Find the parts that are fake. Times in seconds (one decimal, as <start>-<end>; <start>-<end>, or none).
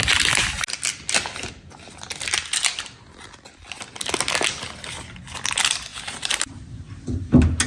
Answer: 5.9-6.7